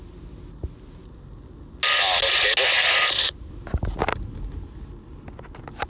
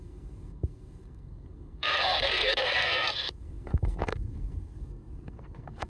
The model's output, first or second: second